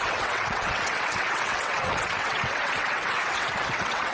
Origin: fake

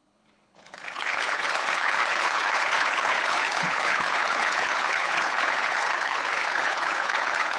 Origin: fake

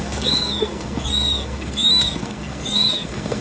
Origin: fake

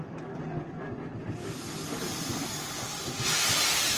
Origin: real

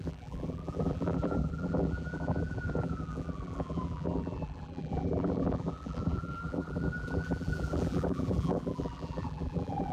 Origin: fake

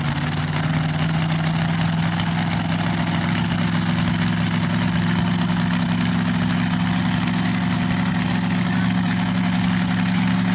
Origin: real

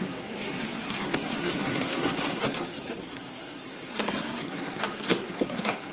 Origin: fake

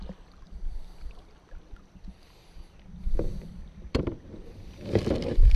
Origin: fake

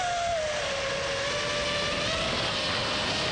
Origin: real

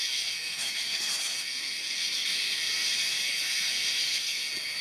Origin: fake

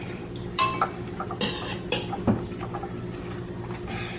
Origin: real